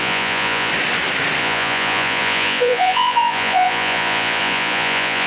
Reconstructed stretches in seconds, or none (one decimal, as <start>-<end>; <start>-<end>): 0.0-0.7; 1.4-5.3